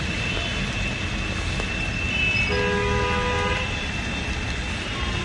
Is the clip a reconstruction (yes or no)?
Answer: no